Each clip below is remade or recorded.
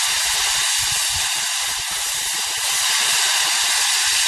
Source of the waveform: recorded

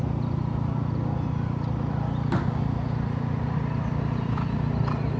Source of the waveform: recorded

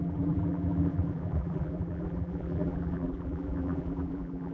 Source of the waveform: remade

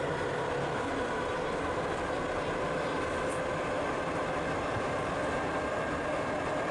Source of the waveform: recorded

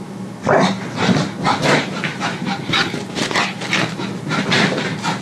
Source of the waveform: recorded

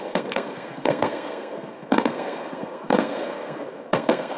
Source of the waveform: remade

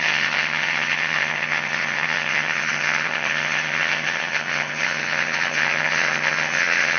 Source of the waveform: remade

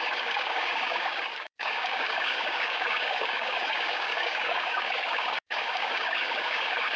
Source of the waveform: remade